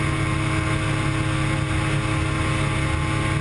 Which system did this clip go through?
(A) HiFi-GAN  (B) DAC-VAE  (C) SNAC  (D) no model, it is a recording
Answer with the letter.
D